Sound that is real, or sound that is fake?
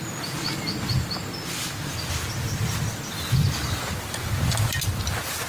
real